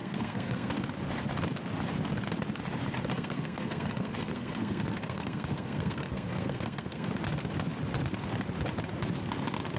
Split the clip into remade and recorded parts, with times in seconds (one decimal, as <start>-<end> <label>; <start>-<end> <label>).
0.0-0.7 remade; 0.7-3.1 recorded; 3.1-7.1 remade; 7.1-9.8 recorded